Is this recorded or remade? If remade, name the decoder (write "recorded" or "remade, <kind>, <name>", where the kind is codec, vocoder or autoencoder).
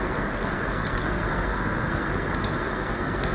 remade, codec, SNAC